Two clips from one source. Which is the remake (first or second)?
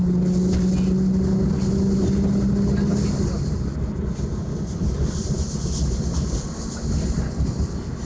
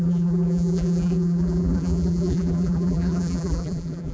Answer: second